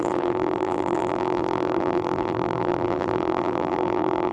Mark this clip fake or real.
fake